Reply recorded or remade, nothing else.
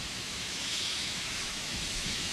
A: remade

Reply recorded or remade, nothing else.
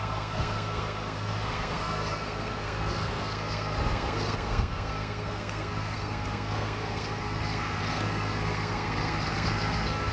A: remade